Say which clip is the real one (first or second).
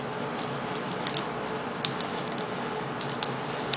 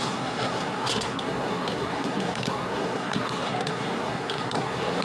first